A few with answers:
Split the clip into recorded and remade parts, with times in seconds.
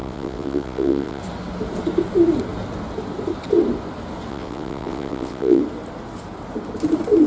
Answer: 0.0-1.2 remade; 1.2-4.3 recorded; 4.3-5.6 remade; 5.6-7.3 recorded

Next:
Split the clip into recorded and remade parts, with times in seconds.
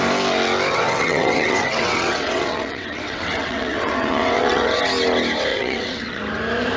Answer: 0.0-0.7 recorded; 0.7-4.8 remade; 4.8-5.5 recorded; 5.5-6.2 remade; 6.2-6.8 recorded